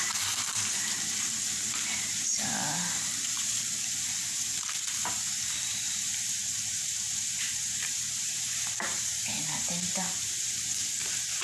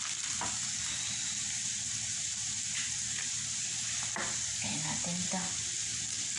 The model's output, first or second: first